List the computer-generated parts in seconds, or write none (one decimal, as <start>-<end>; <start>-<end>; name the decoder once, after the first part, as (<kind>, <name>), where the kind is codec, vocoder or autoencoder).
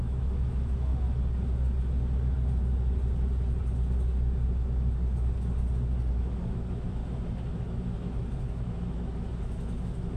0.0-0.9 (autoencoder, DAC-VAE); 6.1-7.0; 7.5-10.2